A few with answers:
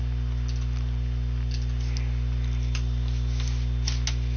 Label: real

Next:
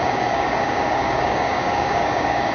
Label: fake